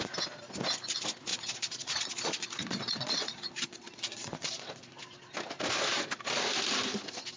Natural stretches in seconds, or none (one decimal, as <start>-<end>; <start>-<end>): 0.0-1.3; 5.0-7.4